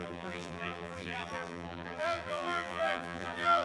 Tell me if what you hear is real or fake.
fake